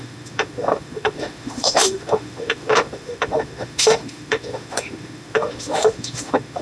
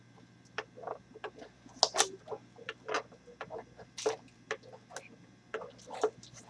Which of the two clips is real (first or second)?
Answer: second